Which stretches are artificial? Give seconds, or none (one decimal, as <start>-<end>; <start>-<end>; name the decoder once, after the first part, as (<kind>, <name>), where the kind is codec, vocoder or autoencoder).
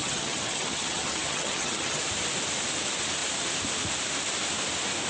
0.0-2.0 (vocoder, HiFi-GAN)